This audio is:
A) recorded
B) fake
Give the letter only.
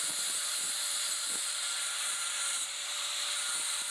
B